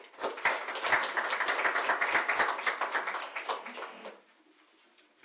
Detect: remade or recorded recorded